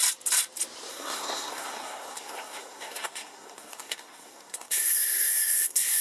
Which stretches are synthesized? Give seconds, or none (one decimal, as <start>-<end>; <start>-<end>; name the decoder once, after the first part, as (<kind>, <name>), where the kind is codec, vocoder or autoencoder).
0.9-6.0 (codec, SNAC)